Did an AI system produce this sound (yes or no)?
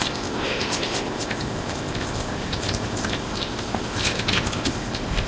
yes